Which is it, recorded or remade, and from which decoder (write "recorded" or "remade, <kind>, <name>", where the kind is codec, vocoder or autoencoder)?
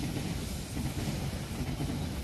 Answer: recorded